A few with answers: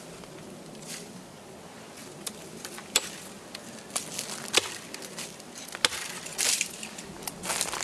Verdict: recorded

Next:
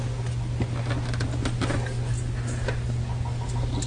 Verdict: recorded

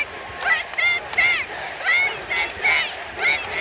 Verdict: recorded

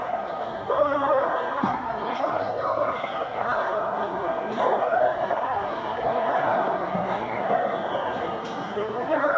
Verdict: remade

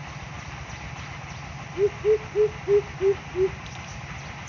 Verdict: recorded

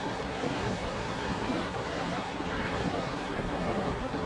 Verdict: remade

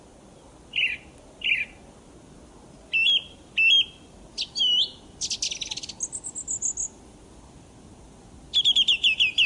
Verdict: recorded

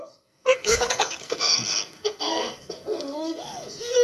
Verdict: remade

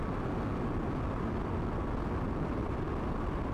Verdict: recorded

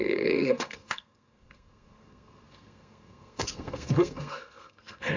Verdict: remade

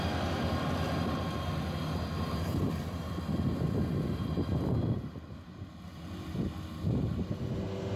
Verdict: recorded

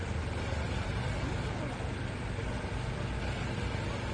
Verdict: recorded